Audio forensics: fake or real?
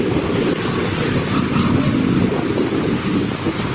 real